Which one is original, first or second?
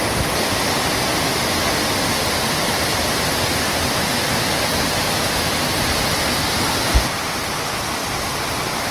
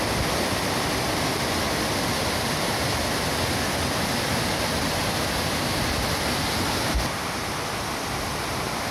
second